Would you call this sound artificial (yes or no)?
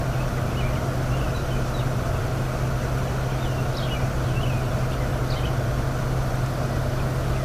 no